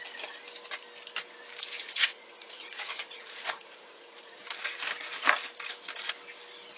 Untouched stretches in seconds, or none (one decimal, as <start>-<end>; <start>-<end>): 0.0-1.8; 4.4-6.8